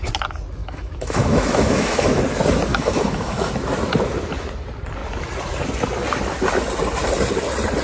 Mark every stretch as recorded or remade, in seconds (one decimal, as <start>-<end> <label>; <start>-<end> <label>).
0.0-0.6 recorded; 0.6-2.2 remade; 2.2-2.7 recorded; 2.7-3.5 remade; 3.5-7.8 recorded